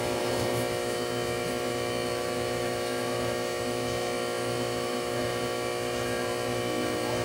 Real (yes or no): no